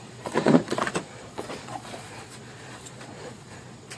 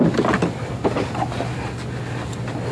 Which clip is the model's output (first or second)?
first